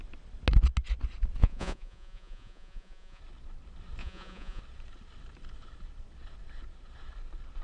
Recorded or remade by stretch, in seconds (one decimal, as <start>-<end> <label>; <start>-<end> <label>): 0.0-1.4 recorded; 1.4-3.2 remade; 3.2-4.0 recorded; 4.0-4.6 remade; 4.6-7.6 recorded